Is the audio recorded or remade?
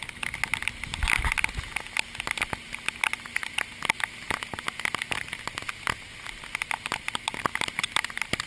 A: recorded